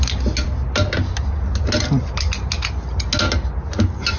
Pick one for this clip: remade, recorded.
recorded